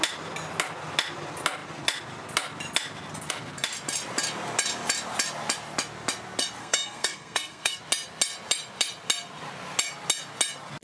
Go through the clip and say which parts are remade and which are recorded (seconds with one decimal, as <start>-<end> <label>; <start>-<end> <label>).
0.0-6.6 recorded; 6.6-7.8 remade; 7.8-10.8 recorded